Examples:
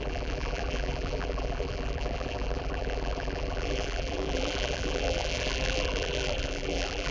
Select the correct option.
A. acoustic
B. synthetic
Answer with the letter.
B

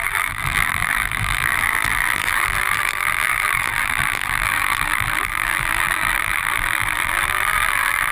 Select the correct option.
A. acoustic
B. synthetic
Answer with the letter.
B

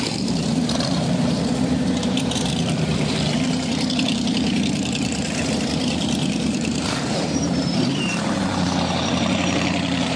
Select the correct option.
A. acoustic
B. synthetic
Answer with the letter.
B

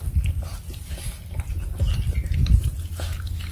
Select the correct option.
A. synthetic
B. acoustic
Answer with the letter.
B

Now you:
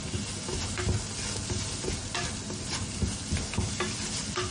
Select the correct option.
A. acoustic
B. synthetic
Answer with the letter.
A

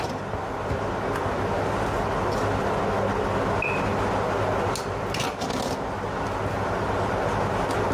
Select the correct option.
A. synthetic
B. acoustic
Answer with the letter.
B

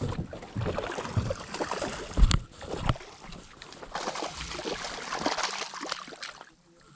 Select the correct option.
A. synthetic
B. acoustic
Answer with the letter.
B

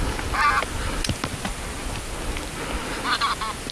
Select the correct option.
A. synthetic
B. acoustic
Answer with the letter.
B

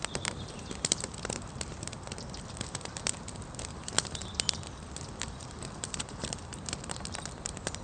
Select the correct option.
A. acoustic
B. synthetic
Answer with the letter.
B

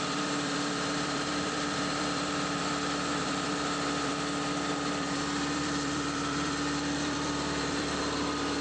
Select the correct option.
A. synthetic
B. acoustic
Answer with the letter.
A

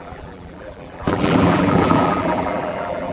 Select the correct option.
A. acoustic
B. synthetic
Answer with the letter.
B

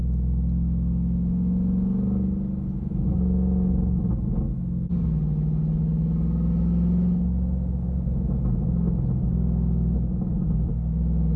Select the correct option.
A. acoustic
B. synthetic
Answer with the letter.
A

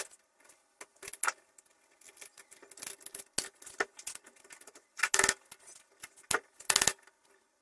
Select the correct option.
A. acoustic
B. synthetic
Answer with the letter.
A